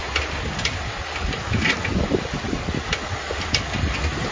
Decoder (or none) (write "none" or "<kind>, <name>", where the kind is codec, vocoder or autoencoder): none